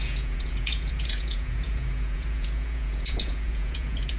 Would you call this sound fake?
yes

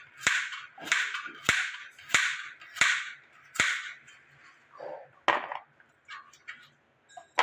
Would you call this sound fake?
no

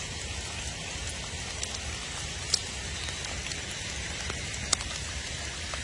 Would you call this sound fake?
no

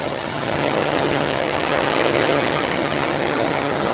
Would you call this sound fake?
yes